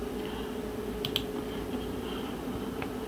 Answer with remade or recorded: remade